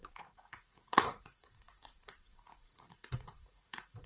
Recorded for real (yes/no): no